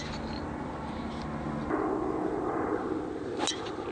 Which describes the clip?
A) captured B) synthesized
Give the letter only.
A